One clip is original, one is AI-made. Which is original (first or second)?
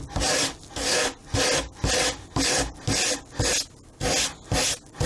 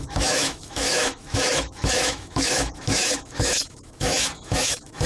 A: first